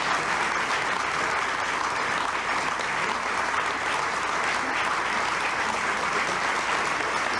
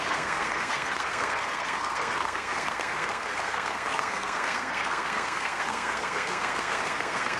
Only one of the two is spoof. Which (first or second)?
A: second